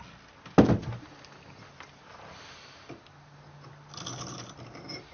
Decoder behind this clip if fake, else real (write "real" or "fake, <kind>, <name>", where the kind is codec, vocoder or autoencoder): real